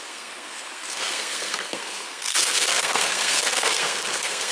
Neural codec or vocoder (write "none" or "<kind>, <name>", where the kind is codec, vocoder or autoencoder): codec, SNAC